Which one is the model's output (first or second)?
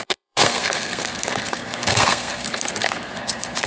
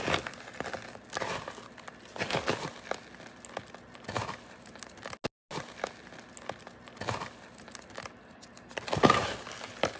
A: first